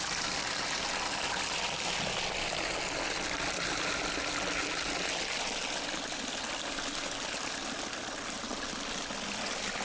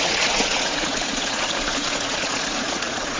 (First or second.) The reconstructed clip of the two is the second